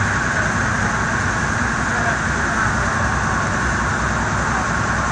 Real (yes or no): yes